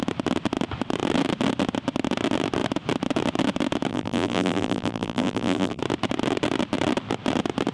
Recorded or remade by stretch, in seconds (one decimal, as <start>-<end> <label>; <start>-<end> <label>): 0.0-3.9 recorded; 3.9-5.8 remade; 5.8-7.7 recorded